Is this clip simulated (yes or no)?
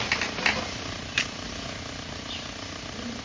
no